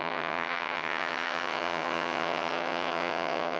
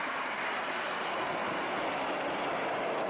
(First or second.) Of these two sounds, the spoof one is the first